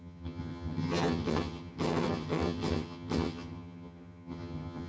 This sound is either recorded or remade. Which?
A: remade